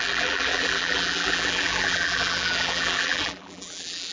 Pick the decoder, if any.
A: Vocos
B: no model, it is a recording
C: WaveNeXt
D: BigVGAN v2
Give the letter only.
D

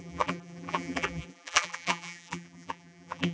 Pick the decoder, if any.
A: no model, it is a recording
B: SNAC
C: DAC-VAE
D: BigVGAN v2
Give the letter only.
D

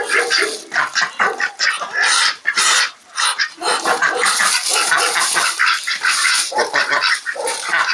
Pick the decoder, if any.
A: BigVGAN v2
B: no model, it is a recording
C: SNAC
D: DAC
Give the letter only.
A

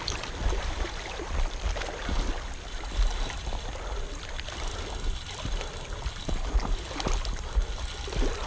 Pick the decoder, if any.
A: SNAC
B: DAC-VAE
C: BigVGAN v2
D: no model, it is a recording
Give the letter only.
D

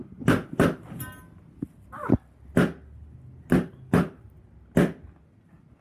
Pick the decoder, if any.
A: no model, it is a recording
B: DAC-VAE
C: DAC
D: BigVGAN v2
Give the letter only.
A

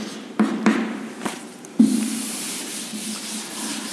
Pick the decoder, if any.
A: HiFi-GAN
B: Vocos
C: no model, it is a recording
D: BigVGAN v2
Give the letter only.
D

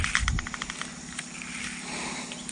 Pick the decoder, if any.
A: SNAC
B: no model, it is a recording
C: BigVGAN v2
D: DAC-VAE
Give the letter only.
B